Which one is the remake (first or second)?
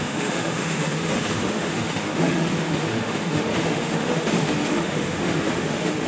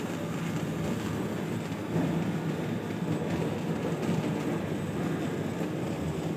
first